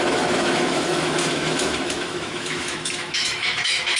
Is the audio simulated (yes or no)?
yes